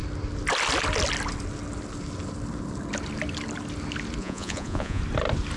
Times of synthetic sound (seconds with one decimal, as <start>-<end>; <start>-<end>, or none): 4.2-5.0